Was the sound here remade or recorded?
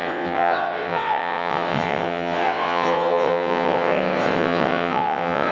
remade